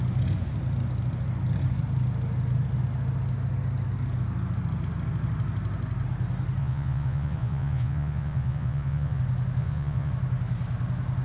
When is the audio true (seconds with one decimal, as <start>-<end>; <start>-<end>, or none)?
0.0-6.6; 9.2-9.6; 10.1-11.2